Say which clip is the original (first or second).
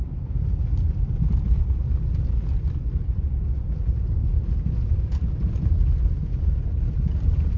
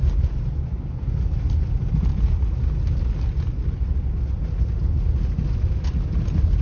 second